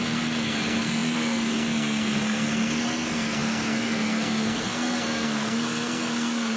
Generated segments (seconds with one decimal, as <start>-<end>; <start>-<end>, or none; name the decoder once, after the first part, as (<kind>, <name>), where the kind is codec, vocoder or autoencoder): 0.0-6.6 (codec, SNAC)